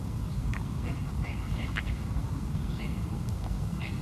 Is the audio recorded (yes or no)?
no